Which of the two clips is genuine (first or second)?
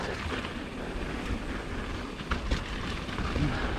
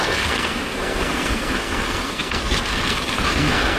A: first